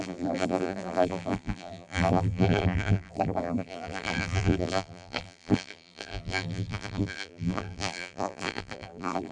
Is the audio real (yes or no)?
no